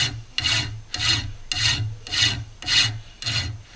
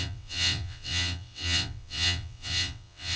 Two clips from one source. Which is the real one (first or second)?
first